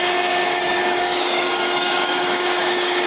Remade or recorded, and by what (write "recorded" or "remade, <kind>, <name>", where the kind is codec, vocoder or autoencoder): remade, codec, DAC